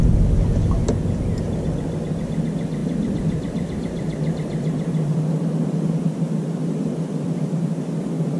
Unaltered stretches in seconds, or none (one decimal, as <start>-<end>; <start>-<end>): 0.0-2.8; 7.7-8.4